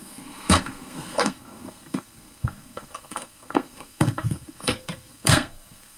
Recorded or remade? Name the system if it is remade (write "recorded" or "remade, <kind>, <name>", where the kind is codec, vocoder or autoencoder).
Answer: remade, codec, SNAC